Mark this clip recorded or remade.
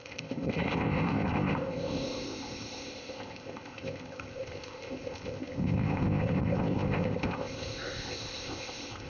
remade